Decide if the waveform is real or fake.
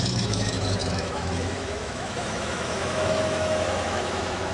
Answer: fake